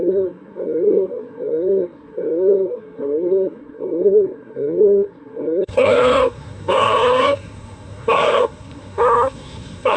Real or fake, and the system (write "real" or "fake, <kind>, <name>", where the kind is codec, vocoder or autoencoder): fake, codec, SNAC